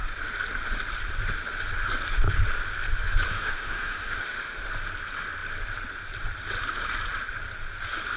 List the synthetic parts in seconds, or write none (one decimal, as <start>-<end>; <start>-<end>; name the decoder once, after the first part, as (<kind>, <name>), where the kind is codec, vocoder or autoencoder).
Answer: 3.3-4.6 (autoencoder, DAC-VAE)